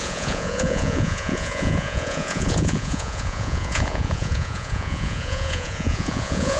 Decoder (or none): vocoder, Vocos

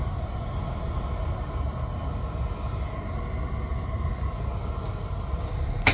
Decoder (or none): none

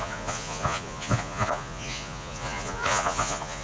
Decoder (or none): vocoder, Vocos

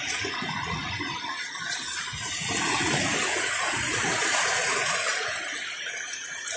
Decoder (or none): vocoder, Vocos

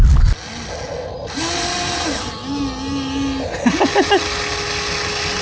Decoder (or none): none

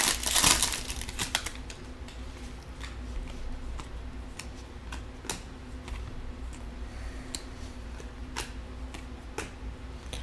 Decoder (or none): none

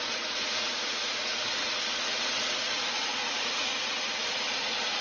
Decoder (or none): vocoder, Vocos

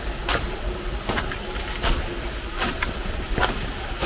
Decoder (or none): none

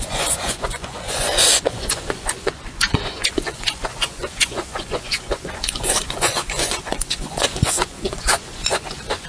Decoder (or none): vocoder, Vocos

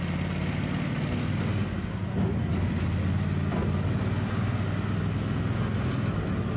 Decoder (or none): none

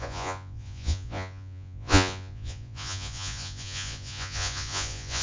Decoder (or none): vocoder, Vocos